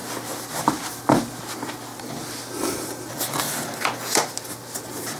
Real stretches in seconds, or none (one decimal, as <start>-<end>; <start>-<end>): 0.0-5.2